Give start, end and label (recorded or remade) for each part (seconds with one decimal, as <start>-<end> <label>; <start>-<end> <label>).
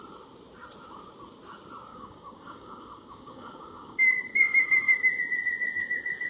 0.0-1.9 recorded; 1.9-5.2 remade; 5.2-6.3 recorded